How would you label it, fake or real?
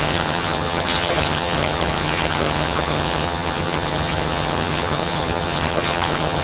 fake